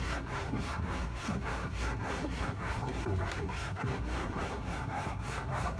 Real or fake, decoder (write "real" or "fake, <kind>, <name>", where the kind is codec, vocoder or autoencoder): fake, codec, SNAC